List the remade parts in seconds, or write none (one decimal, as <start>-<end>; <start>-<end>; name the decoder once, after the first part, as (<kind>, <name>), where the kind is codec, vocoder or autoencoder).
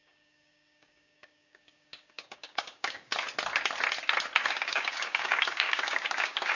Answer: 0.0-3.1 (codec, DAC); 4.4-6.6